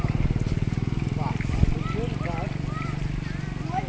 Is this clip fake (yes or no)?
no